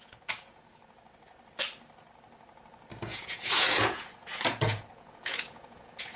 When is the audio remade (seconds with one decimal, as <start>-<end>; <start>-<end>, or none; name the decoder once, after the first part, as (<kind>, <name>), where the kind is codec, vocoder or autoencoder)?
0.0-0.8 (vocoder, Vocos); 3.0-6.2